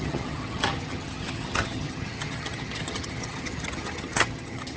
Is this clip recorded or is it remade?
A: remade